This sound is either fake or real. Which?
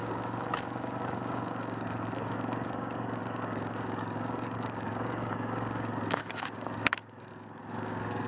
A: fake